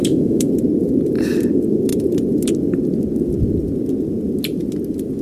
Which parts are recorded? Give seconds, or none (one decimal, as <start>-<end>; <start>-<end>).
0.5-5.2